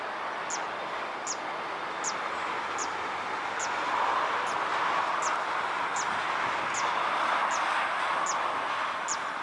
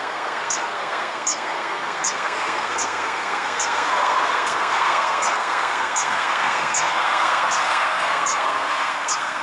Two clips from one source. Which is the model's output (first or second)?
second